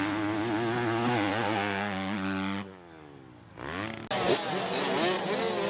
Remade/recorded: recorded